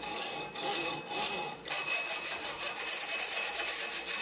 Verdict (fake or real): real